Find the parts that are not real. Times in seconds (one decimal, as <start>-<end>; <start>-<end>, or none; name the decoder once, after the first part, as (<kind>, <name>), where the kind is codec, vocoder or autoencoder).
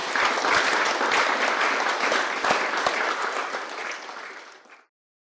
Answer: 0.0-3.2 (vocoder, BigVGAN v2); 3.8-4.8